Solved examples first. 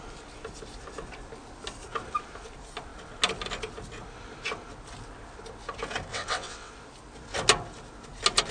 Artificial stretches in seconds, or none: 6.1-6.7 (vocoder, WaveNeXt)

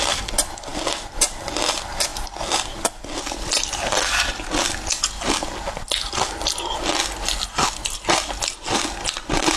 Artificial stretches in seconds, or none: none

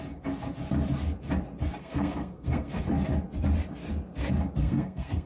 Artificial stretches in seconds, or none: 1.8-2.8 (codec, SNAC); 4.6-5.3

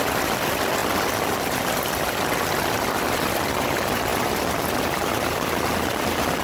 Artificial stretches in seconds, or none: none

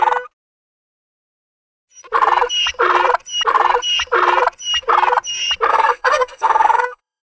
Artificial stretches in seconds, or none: 5.7-7.2 (codec, SNAC)

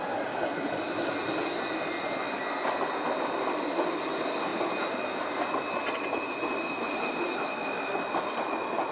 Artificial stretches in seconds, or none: none